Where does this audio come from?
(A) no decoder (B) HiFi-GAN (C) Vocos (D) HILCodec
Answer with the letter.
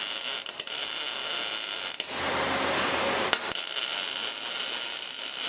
A